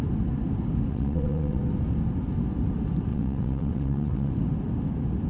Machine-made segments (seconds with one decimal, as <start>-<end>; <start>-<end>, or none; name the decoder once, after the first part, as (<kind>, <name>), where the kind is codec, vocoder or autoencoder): 0.9-1.6 (vocoder, WaveNeXt); 3.1-4.3